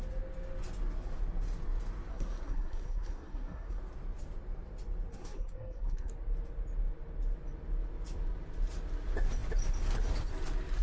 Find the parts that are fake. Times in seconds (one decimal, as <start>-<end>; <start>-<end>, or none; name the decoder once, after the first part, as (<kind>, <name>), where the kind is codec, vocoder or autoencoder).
2.1-3.8 (codec, SNAC); 5.1-6.1